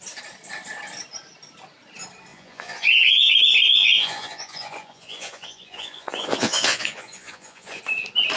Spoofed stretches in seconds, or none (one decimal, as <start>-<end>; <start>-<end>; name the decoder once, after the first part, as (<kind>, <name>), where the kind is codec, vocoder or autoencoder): 2.3-3.3 (vocoder, Vocos); 3.7-7.8